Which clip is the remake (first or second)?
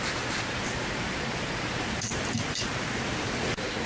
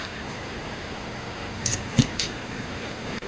second